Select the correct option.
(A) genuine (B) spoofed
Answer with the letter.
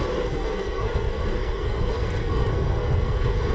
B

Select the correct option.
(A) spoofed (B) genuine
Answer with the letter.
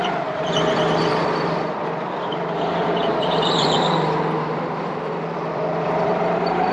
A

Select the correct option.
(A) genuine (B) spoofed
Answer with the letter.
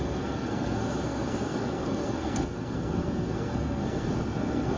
B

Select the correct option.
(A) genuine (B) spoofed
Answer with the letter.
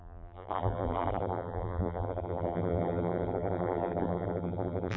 B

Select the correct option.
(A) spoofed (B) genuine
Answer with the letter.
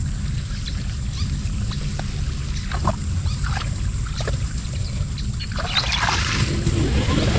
B